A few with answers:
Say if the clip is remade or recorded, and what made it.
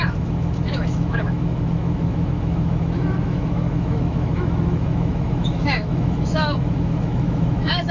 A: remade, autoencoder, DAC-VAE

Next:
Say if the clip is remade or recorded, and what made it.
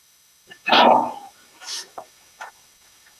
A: remade, autoencoder, DAC-VAE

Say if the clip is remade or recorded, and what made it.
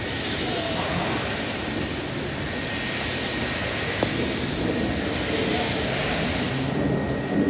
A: recorded